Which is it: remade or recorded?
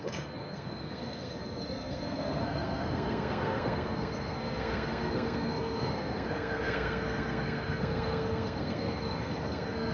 remade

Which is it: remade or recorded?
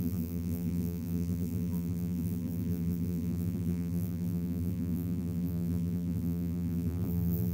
remade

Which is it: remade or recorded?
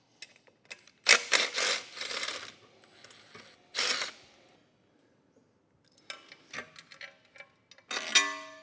recorded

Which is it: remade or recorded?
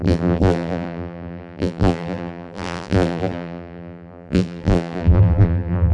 remade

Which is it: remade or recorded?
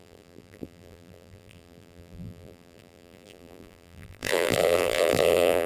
remade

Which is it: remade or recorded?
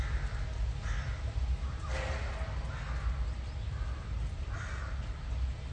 recorded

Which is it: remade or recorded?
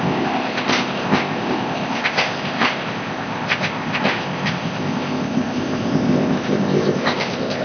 remade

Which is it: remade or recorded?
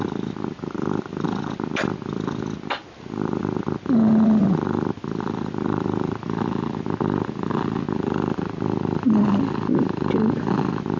recorded